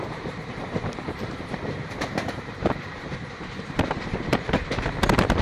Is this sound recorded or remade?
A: remade